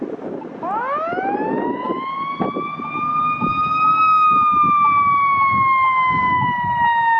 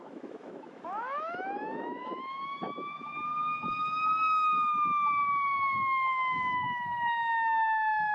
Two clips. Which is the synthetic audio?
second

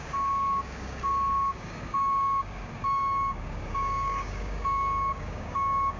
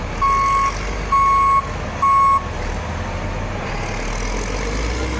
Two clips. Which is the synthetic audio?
first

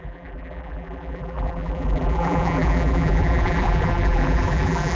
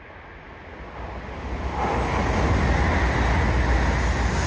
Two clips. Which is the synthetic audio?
first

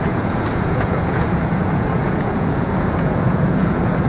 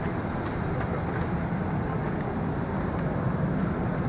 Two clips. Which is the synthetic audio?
first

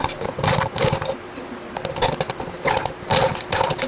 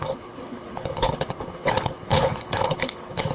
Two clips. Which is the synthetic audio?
second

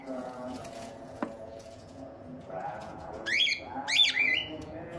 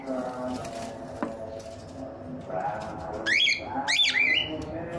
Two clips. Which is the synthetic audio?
first